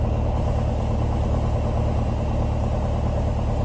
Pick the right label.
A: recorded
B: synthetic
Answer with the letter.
A